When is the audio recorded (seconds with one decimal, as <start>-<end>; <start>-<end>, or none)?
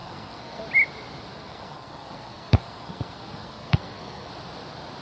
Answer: 0.6-1.3; 4.3-5.0